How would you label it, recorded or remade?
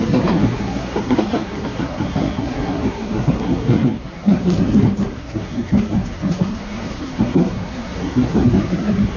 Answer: remade